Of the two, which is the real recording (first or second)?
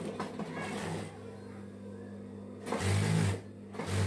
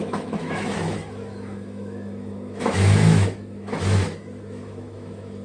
first